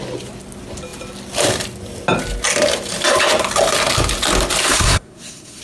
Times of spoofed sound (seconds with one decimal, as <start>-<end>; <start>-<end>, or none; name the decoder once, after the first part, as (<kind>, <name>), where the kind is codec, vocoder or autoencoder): 4.6-5.6 (codec, SNAC)